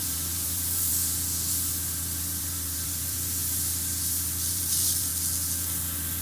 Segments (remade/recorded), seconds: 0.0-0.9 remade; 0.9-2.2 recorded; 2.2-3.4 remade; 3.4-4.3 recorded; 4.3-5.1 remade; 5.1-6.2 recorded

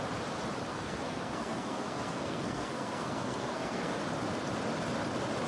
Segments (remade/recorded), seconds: 0.0-0.7 recorded; 0.7-4.0 remade; 4.0-5.5 recorded

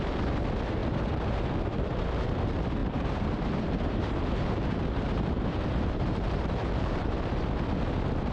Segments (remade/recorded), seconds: 0.0-2.8 recorded; 2.8-7.4 remade; 7.4-8.3 recorded

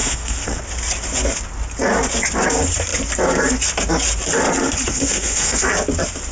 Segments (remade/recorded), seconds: 0.0-0.6 remade; 0.6-4.9 recorded; 4.9-5.7 remade; 5.7-6.3 recorded

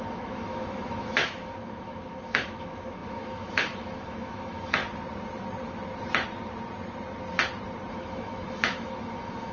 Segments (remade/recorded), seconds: 0.0-4.8 remade; 4.8-7.9 recorded; 7.9-9.5 remade

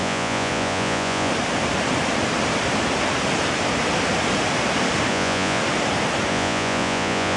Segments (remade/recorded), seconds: 0.0-1.3 remade; 1.3-5.1 recorded; 5.1-5.6 remade; 5.6-6.3 recorded; 6.3-7.4 remade

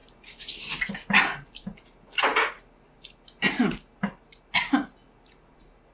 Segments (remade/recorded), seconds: 0.0-5.9 recorded

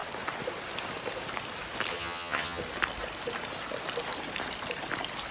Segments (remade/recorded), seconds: 0.0-1.9 recorded; 1.9-2.6 remade; 2.6-5.3 recorded